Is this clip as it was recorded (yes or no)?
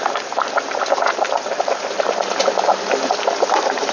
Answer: yes